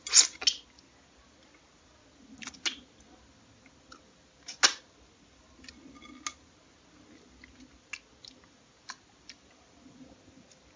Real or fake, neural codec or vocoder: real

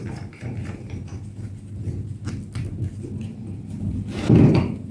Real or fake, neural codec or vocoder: real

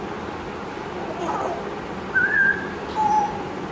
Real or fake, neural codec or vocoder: real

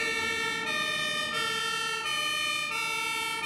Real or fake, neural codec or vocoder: real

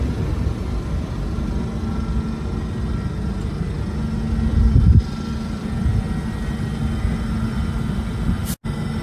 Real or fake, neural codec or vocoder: real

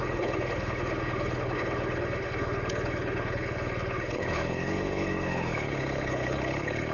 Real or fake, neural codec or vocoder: fake, codec, HILCodec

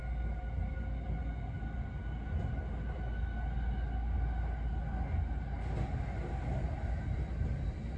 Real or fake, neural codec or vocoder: real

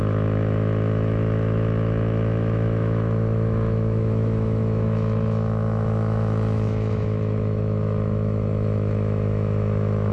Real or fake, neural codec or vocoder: fake, autoencoder, DAC-VAE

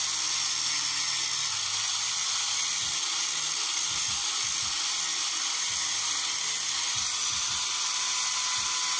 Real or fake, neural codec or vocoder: real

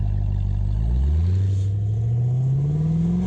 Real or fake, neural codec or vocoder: real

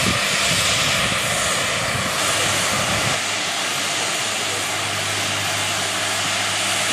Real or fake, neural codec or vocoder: real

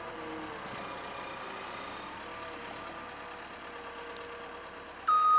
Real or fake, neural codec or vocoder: real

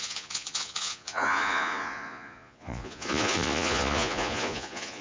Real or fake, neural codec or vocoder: fake, vocoder, Vocos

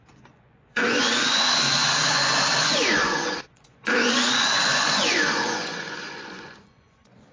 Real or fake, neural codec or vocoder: fake, vocoder, Vocos